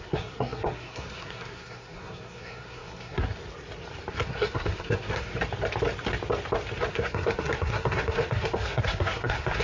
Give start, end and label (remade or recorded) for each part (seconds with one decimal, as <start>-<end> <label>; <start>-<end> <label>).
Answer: 0.0-3.4 remade; 3.4-4.1 recorded; 4.1-5.3 remade; 5.3-6.9 recorded; 6.9-9.6 remade